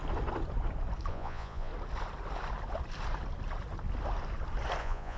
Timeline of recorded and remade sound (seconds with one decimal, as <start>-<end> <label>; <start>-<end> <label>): 0.0-1.1 recorded; 1.1-1.7 remade; 1.7-4.8 recorded; 4.8-5.2 remade